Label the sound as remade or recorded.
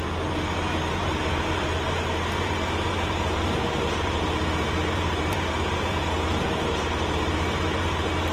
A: remade